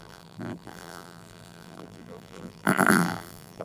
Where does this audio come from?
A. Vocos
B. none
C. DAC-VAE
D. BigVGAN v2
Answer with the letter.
D